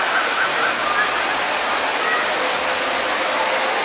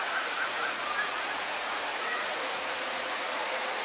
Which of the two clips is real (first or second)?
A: first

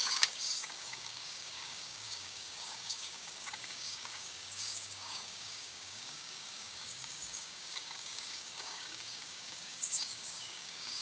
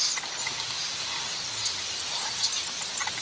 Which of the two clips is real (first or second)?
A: second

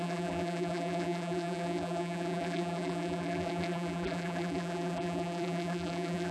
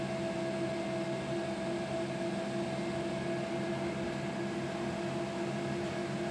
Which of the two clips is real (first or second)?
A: second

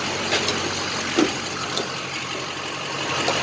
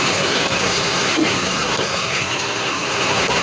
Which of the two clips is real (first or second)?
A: first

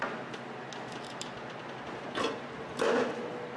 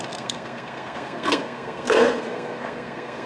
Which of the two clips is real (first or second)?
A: first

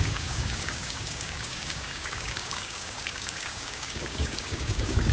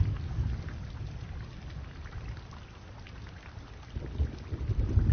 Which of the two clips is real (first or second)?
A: second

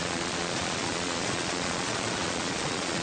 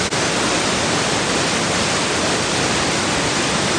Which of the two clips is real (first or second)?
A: second